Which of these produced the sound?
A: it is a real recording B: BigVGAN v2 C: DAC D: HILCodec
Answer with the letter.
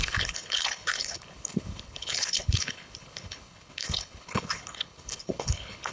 D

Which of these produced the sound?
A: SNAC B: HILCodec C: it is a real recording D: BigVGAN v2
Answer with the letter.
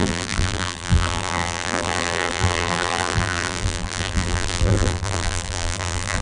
D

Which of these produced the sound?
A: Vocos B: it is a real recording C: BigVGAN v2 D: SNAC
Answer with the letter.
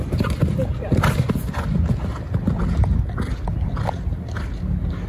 B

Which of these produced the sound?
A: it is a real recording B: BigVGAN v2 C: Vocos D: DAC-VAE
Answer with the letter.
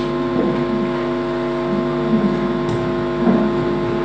A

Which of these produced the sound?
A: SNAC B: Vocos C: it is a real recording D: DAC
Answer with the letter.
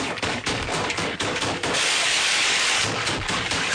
D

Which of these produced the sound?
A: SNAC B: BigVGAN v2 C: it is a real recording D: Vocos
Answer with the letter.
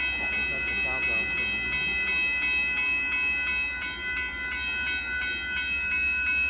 C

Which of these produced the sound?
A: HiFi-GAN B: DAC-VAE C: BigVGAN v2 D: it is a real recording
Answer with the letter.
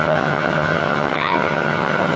A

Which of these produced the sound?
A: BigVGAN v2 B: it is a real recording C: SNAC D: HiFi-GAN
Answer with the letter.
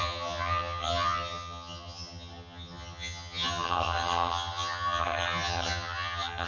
D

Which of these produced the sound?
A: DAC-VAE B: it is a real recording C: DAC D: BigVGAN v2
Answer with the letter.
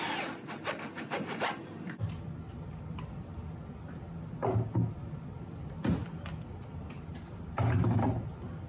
B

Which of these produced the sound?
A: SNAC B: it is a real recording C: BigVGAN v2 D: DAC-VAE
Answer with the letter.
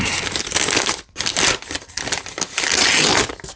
B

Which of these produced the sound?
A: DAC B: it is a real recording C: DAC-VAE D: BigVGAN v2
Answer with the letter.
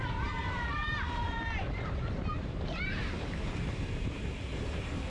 D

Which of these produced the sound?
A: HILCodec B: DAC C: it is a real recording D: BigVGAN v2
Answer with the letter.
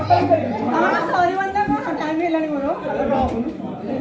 C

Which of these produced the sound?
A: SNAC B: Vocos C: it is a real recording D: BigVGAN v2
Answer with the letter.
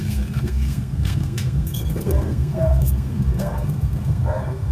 A